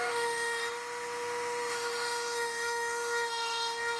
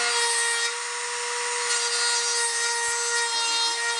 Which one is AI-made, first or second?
first